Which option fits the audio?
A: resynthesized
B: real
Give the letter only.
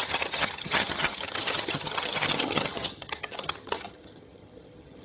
A